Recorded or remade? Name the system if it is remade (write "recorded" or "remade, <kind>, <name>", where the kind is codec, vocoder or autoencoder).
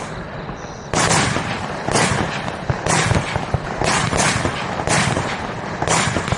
recorded